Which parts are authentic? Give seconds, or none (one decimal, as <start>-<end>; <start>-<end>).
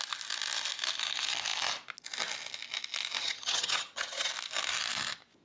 0.0-3.2; 4.3-5.4